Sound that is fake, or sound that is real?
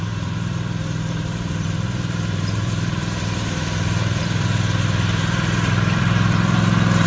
fake